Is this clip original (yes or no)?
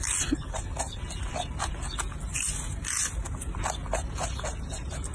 yes